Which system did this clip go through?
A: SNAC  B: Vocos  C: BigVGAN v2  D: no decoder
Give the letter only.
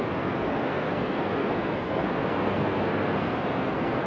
A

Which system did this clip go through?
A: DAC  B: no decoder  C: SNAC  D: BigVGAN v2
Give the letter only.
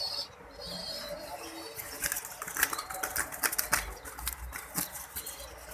B